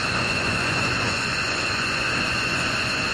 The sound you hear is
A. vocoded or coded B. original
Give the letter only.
A